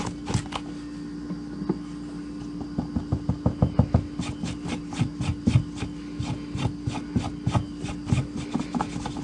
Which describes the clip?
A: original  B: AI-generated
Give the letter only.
A